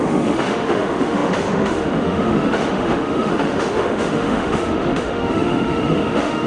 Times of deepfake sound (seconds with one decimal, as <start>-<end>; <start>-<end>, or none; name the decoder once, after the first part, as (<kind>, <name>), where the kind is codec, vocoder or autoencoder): 0.0-6.5 (autoencoder, DAC-VAE)